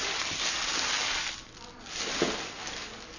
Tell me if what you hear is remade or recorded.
recorded